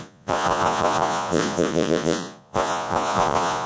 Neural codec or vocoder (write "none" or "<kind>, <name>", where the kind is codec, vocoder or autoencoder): vocoder, Vocos